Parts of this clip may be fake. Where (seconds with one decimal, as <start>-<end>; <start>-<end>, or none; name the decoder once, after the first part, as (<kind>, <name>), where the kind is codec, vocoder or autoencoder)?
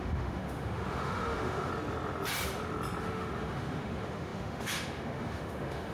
0.0-1.7 (autoencoder, DAC-VAE); 3.0-5.9